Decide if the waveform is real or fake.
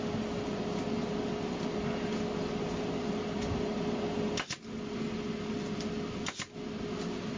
real